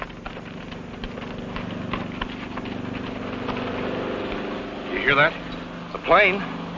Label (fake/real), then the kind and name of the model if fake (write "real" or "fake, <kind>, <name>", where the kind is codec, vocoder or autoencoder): real